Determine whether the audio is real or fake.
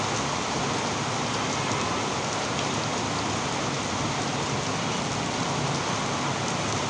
real